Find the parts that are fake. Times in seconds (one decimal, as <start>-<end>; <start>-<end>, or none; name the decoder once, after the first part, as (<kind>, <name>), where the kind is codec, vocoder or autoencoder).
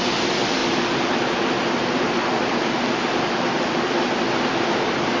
none